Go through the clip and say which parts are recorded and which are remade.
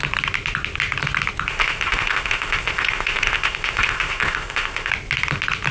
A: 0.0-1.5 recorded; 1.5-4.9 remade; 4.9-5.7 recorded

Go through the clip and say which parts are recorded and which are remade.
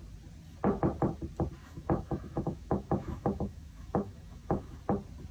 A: 0.0-1.6 recorded; 1.6-4.8 remade; 4.8-5.3 recorded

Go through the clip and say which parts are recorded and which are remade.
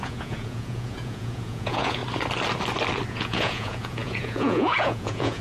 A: 0.0-2.0 remade; 2.0-3.1 recorded; 3.1-5.4 remade